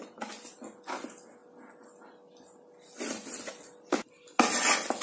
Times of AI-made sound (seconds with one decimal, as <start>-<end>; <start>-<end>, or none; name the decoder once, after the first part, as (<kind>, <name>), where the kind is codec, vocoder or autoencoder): none